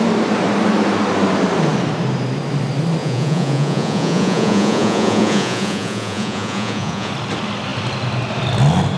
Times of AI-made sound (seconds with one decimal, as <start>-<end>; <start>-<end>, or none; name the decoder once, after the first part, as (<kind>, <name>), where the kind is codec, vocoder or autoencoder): 3.0-7.1 (vocoder, Vocos)